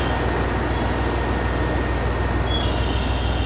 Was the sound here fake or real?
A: real